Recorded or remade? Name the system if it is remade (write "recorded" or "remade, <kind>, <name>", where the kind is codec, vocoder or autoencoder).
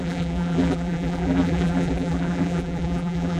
remade, vocoder, BigVGAN v2